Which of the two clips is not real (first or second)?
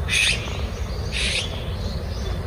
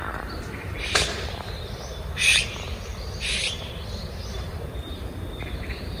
second